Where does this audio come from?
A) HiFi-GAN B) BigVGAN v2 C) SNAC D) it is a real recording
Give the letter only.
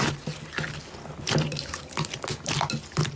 D